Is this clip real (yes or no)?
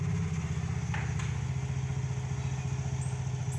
yes